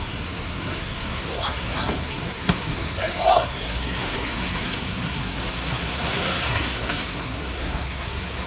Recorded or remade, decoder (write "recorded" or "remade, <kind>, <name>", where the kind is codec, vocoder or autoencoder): remade, codec, SNAC